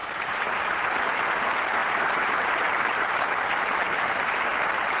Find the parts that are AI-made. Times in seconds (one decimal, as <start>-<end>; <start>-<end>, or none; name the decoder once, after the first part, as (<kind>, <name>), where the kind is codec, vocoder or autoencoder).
0.0-0.6 (vocoder, BigVGAN v2); 1.8-2.5